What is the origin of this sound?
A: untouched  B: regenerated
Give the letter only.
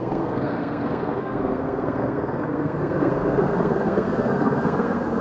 B